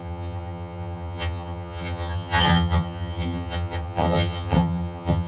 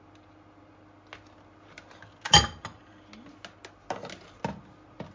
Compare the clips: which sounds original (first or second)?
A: second